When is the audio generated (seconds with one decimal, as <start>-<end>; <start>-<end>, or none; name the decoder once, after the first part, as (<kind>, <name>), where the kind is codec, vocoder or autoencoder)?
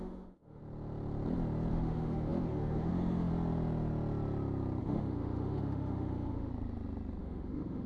0.0-0.6 (autoencoder, DAC-VAE); 1.7-3.3; 4.8-6.5; 7.2-7.9